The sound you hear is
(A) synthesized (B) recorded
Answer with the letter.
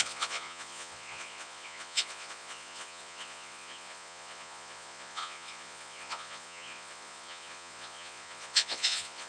A